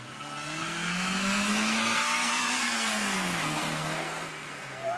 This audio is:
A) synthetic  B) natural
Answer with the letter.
A